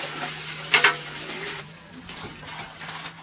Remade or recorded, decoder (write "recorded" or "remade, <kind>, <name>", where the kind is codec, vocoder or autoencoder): recorded